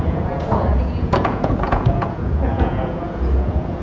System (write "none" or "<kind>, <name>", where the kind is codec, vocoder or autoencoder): vocoder, Vocos